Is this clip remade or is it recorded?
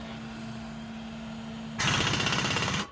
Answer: recorded